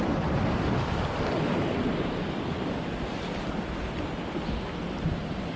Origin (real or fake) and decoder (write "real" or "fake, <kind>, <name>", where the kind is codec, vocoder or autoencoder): real